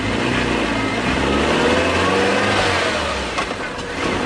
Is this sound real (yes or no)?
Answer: yes